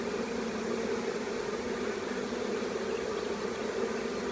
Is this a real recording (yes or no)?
yes